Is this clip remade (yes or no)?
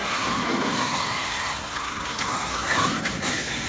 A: yes